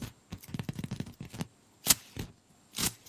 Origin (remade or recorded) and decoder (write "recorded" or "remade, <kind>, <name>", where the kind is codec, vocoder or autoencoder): recorded